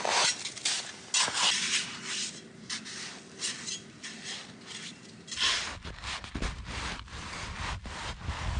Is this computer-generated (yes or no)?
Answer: no